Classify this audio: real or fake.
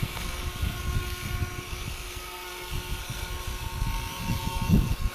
fake